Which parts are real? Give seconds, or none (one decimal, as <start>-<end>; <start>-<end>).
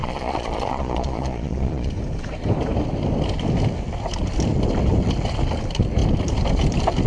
1.9-7.1